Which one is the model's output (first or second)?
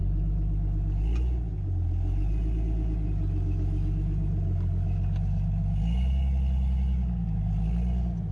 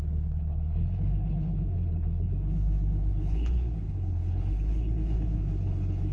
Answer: second